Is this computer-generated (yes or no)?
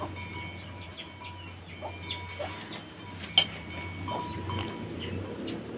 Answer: no